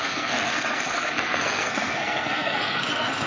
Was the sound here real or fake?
fake